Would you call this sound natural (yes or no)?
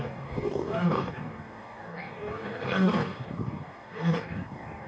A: no